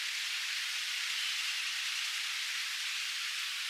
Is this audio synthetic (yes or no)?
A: no